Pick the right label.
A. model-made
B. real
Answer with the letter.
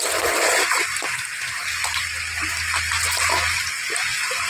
B